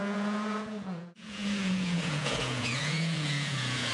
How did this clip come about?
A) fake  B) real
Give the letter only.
A